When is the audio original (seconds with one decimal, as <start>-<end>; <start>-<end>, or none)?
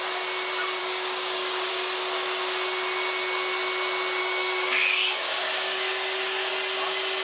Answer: 0.0-0.8; 1.7-4.2; 6.5-7.2